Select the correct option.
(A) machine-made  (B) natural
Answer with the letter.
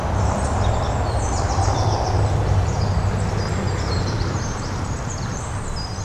A